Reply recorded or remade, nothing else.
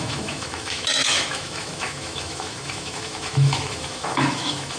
remade